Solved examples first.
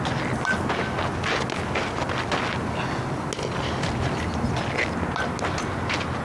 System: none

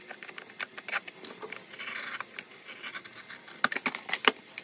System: none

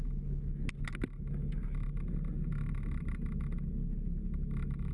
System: none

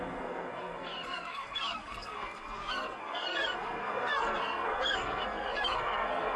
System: codec, SNAC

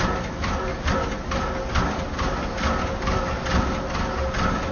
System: none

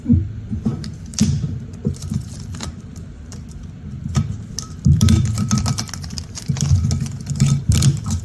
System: vocoder, BigVGAN v2